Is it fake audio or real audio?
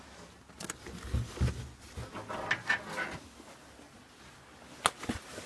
real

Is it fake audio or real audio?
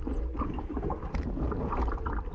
real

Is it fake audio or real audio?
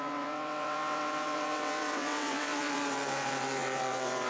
fake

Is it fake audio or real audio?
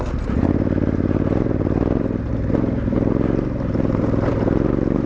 fake